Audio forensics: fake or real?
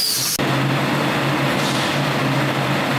real